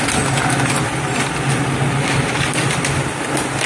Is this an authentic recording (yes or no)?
yes